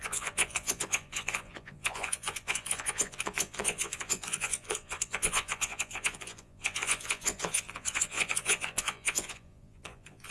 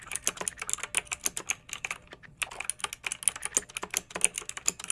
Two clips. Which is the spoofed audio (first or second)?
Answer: first